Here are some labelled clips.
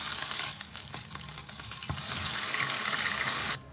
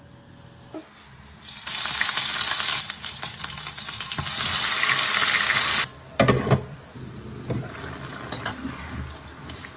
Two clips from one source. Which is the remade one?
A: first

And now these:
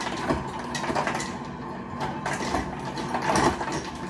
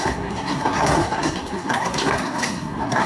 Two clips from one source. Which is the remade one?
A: second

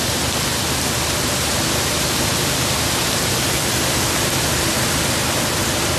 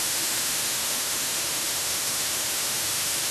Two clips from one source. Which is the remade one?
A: second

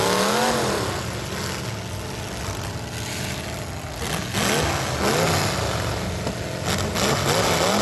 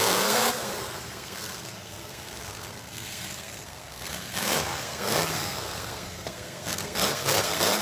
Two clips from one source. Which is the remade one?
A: second